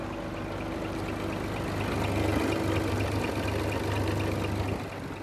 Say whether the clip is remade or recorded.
recorded